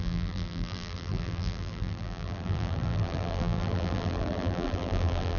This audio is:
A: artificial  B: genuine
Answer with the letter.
A